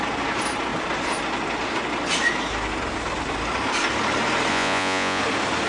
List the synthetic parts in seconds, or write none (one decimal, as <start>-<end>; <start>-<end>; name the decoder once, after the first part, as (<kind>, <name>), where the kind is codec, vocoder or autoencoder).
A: 4.5-5.2 (vocoder, Vocos)